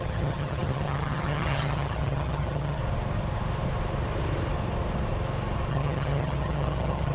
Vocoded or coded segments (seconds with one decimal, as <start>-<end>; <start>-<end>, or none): 0.0-2.8; 5.7-7.1